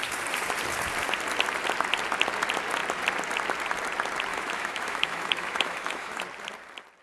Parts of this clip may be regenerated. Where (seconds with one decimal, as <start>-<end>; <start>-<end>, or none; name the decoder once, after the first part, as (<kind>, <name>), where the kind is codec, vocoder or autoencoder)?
4.3-6.2 (autoencoder, DAC-VAE)

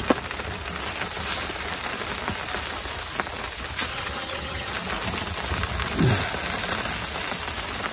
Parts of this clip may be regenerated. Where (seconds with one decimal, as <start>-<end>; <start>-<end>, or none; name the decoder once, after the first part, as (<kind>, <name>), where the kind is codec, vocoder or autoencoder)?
3.9-4.7 (vocoder, HiFi-GAN)

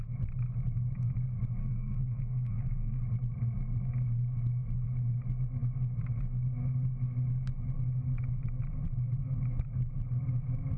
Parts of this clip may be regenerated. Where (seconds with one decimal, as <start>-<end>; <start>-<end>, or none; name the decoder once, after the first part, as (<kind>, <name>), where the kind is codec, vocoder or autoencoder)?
1.6-3.0 (codec, SNAC)

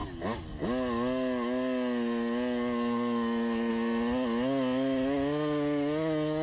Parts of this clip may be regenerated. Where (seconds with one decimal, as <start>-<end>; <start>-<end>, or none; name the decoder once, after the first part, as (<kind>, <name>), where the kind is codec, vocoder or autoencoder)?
none

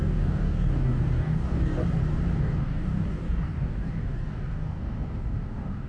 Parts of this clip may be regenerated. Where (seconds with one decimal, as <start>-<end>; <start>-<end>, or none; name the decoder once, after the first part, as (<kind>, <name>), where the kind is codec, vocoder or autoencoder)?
0.0-1.8 (codec, DAC); 2.4-5.9

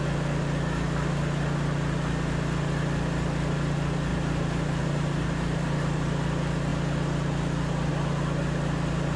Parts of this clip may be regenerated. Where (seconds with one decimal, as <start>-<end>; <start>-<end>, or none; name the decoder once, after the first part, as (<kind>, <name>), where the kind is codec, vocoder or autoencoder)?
4.1-6.0 (vocoder, BigVGAN v2)

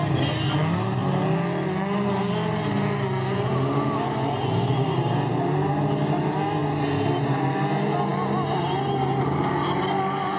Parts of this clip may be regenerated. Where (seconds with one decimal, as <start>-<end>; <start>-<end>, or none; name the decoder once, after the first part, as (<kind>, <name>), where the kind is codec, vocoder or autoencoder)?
none